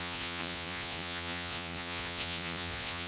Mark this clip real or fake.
fake